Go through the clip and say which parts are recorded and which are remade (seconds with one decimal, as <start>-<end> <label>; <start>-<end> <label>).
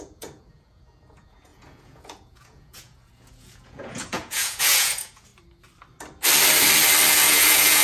0.0-5.3 remade; 5.3-7.1 recorded; 7.1-7.8 remade